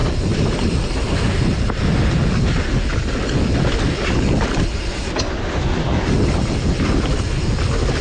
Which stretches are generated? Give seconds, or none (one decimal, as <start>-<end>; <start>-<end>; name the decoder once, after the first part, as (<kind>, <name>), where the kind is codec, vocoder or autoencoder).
none